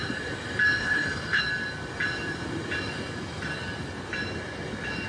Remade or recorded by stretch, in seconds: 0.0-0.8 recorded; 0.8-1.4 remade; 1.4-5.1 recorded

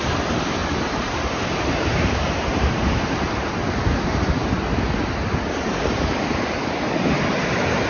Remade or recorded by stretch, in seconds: 0.0-0.6 recorded; 0.6-3.1 remade; 3.1-7.9 recorded

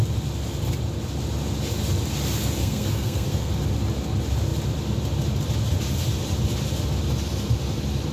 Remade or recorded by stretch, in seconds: 0.0-2.6 recorded; 2.6-3.5 remade; 3.5-8.1 recorded

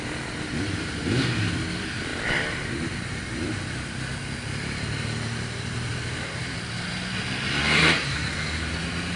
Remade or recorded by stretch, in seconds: 0.0-7.6 recorded; 7.6-8.3 remade; 8.3-9.2 recorded

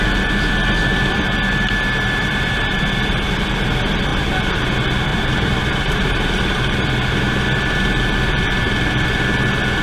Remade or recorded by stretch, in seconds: 0.0-2.2 recorded; 2.2-2.8 remade; 2.8-5.1 recorded; 5.1-6.4 remade; 6.4-9.8 recorded